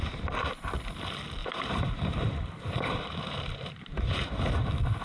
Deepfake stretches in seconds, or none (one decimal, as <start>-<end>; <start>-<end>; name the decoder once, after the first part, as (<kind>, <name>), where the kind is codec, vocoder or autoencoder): 1.4-4.4 (vocoder, BigVGAN v2)